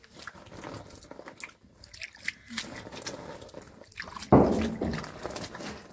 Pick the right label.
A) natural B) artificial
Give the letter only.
A